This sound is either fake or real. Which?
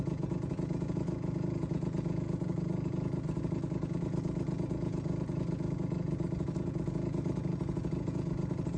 fake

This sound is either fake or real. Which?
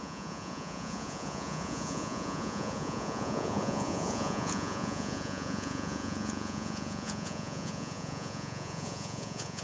fake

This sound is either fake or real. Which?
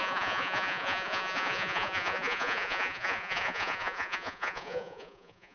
fake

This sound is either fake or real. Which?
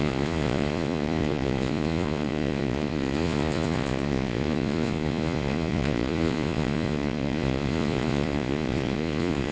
fake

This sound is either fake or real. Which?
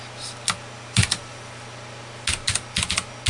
real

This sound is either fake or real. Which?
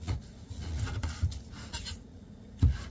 fake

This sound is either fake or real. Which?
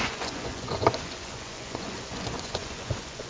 fake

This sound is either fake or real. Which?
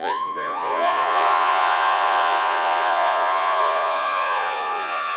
fake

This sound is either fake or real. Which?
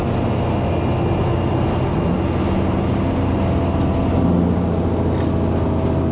real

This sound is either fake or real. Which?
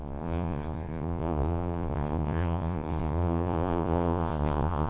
fake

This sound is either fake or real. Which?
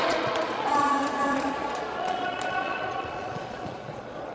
fake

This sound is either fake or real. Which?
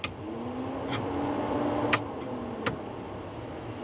real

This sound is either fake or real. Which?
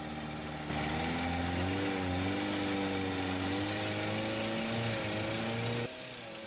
real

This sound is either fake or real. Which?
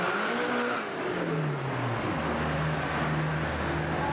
real